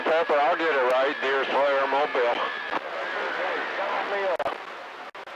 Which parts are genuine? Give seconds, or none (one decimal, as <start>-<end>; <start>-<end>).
0.0-5.4